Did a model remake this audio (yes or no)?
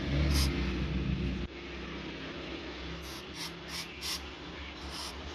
no